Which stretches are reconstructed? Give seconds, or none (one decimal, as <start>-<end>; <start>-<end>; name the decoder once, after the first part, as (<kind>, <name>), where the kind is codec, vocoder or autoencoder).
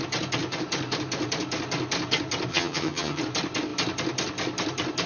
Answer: 2.5-3.2 (vocoder, HiFi-GAN)